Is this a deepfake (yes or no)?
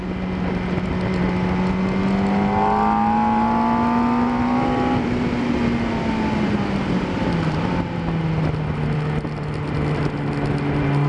no